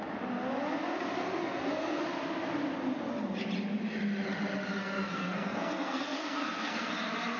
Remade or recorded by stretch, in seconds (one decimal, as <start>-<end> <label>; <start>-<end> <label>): 0.0-1.2 recorded; 1.2-2.0 remade; 2.0-4.8 recorded; 4.8-6.9 remade; 6.9-7.4 recorded